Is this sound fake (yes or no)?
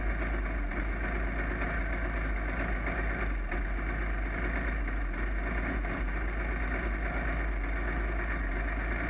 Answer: no